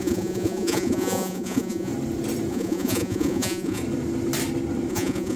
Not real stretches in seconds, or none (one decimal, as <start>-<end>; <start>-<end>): 0.0-1.9; 2.5-3.8; 4.9-5.4